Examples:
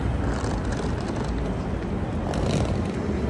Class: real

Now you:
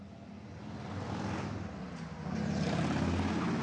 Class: real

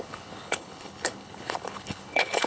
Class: fake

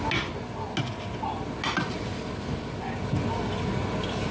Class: real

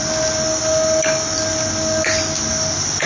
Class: real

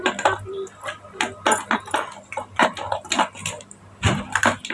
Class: real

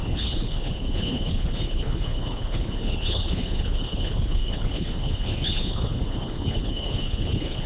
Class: fake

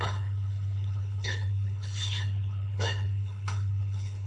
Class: fake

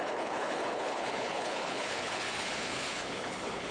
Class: fake